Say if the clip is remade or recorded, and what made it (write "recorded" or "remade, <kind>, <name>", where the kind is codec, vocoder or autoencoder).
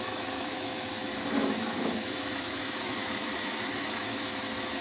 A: remade, autoencoder, DAC-VAE